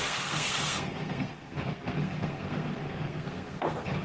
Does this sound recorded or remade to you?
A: remade